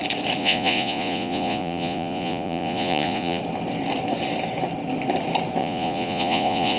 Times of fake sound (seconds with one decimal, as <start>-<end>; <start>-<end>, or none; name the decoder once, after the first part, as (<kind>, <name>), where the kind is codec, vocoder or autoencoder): 0.4-3.4 (vocoder, Vocos); 5.6-6.8